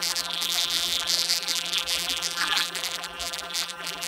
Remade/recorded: remade